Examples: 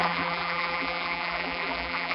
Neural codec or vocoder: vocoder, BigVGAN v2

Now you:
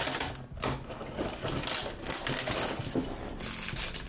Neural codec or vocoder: none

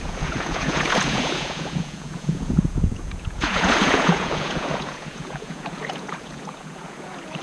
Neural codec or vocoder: vocoder, Vocos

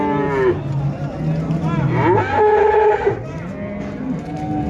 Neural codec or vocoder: none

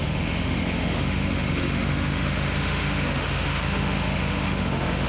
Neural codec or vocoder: autoencoder, DAC-VAE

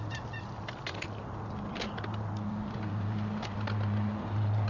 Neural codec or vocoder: none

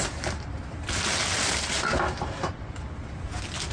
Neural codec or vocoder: none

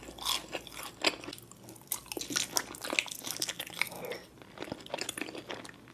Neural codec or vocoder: none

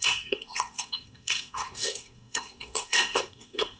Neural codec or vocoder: codec, SNAC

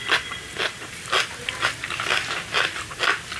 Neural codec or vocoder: none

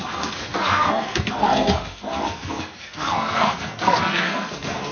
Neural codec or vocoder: codec, SNAC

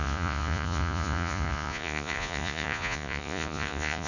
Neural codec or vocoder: vocoder, Vocos